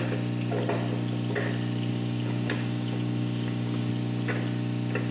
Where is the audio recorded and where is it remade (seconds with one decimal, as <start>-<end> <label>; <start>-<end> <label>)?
0.0-1.9 recorded; 1.9-3.9 remade; 3.9-5.1 recorded